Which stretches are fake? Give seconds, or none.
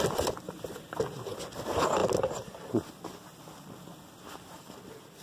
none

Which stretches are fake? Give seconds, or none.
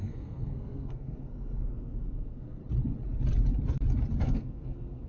0.0-2.6 (codec, SNAC); 4.2-5.1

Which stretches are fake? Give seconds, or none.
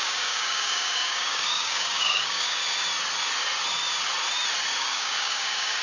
0.0-2.6 (codec, DAC); 4.8-5.8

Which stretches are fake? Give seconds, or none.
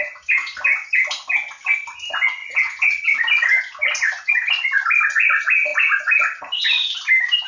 none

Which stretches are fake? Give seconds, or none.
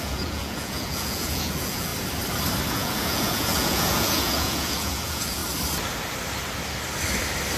0.0-1.9 (vocoder, Vocos); 2.7-5.4